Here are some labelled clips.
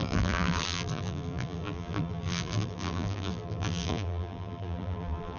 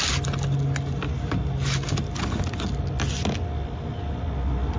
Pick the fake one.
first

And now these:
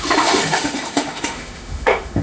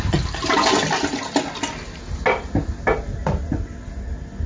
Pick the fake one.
first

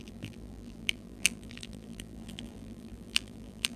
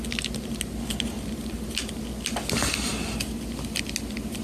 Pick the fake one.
first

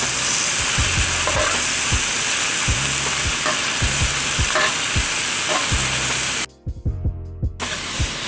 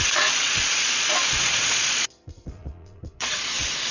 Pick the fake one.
second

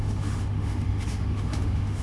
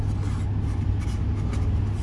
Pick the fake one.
first